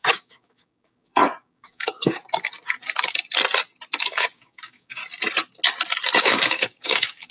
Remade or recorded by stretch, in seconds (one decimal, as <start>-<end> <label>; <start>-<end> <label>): 0.0-2.2 remade; 2.2-4.0 recorded; 4.0-5.0 remade; 5.0-6.2 recorded; 6.2-7.3 remade